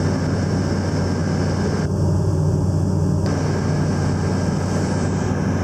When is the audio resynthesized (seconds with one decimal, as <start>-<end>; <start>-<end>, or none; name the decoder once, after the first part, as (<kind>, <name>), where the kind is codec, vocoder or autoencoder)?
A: none